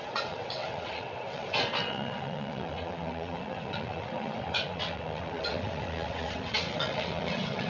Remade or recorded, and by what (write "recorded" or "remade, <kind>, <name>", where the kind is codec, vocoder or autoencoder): remade, vocoder, WaveNeXt